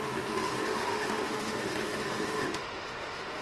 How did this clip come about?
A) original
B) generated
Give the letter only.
B